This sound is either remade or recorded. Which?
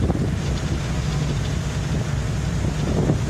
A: recorded